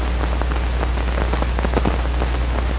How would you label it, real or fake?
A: real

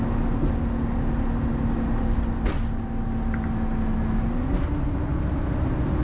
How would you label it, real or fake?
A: real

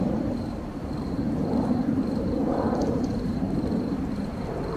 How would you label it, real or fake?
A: fake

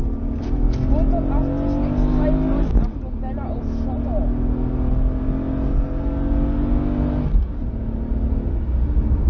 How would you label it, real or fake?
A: real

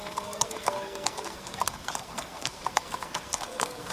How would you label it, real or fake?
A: fake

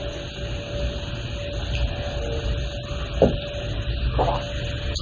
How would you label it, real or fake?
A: real